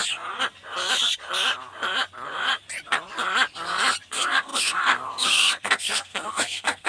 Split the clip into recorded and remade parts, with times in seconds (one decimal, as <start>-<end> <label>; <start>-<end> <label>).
0.0-4.1 recorded; 4.1-6.9 remade